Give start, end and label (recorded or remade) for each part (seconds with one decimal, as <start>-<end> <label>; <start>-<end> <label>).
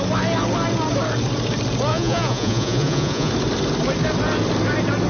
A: 0.0-1.9 recorded; 1.9-3.3 remade; 3.3-5.1 recorded